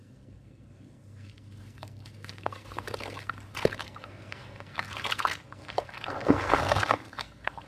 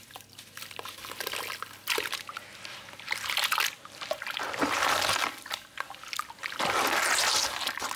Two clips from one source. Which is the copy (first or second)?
first